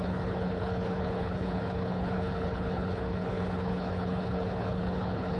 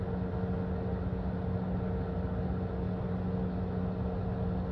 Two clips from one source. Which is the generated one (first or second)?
first